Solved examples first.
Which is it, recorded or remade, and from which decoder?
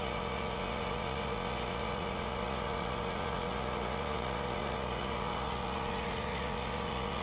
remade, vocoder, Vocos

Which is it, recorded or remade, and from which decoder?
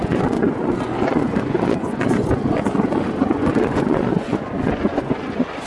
remade, vocoder, Vocos